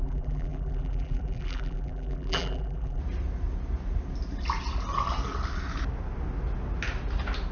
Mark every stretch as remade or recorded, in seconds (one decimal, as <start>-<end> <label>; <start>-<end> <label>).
0.0-3.0 remade; 3.0-7.5 recorded